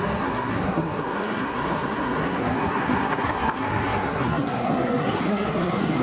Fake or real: fake